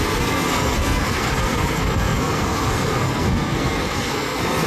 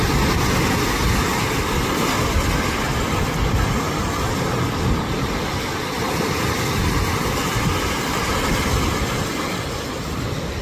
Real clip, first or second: second